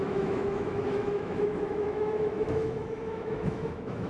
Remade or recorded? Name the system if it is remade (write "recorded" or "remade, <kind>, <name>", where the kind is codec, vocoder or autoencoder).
remade, autoencoder, DAC-VAE